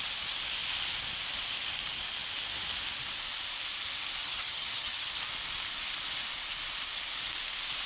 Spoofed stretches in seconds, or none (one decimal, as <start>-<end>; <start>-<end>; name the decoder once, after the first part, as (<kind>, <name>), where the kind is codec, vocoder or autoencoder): 4.2-5.1 (vocoder, HiFi-GAN)